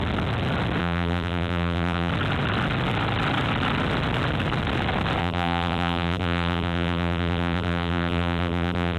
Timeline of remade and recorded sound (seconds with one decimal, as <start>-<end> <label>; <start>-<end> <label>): 0.0-0.8 recorded; 0.8-2.1 remade; 2.1-5.2 recorded; 5.2-9.0 remade